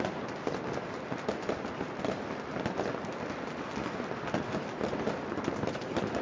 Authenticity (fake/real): real